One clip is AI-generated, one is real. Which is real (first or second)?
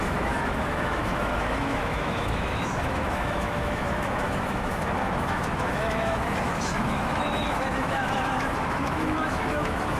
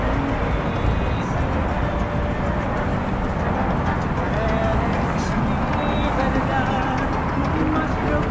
second